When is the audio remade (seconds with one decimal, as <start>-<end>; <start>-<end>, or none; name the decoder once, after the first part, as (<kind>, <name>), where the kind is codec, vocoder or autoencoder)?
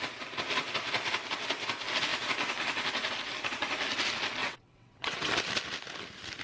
4.4-5.3 (vocoder, WaveNeXt)